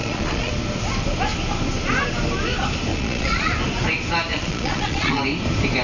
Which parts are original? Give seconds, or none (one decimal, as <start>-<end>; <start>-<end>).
0.5-2.9; 3.5-4.3; 5.2-5.8

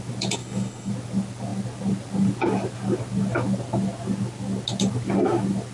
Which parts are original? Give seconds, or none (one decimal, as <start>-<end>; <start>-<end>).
0.0-0.4; 0.9-5.7

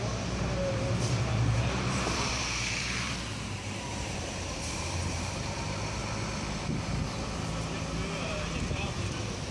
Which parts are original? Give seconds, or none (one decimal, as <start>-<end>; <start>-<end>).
6.0-8.2